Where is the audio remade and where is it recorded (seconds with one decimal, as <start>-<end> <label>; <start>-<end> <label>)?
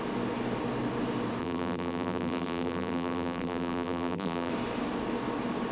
0.0-1.4 recorded; 1.4-4.5 remade; 4.5-5.7 recorded